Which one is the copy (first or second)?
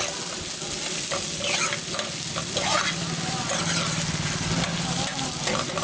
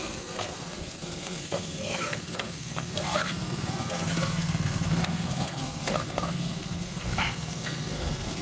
second